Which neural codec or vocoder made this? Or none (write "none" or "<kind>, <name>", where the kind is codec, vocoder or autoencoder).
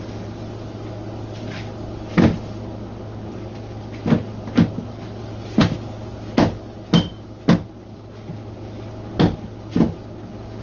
none